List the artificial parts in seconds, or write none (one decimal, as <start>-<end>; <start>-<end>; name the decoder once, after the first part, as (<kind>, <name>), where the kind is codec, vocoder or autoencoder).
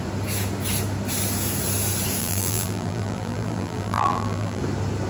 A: 2.2-4.6 (vocoder, BigVGAN v2)